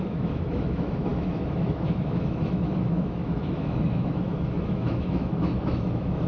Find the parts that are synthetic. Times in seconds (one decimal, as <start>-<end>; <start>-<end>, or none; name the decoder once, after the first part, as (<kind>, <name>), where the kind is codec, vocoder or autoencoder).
0.0-6.3 (autoencoder, DAC-VAE)